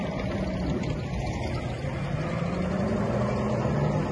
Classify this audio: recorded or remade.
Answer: recorded